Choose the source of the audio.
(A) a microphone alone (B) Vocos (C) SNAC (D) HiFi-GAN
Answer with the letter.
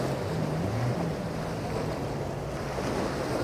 A